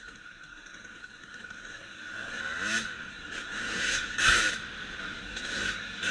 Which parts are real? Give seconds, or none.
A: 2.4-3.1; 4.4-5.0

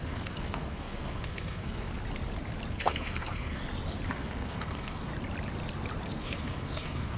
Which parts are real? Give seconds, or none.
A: 1.9-2.7; 3.6-4.1; 5.1-6.1

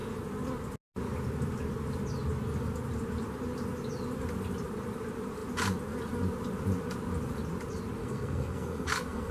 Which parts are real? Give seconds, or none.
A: 0.0-8.0

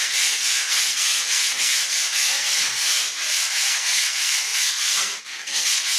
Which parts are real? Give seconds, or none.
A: none

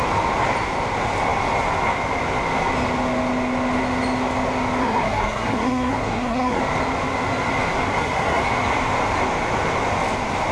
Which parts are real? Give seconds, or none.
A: 0.0-4.8; 6.6-7.9; 8.4-10.5